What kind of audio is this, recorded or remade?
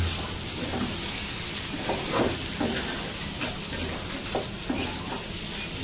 recorded